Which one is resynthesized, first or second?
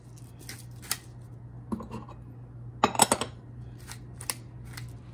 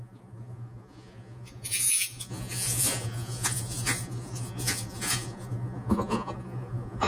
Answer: second